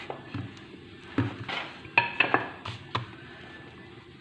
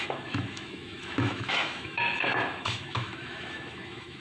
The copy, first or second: second